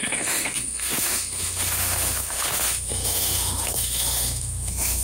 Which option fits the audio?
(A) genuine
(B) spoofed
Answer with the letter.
B